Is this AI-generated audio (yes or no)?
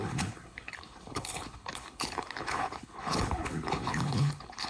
yes